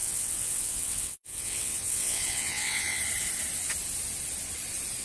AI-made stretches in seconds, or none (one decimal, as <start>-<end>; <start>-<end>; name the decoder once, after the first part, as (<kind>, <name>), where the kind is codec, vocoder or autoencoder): 0.0-3.0 (vocoder, WaveNeXt)